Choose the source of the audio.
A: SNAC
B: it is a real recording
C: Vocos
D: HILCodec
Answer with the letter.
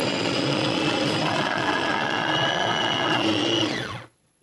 C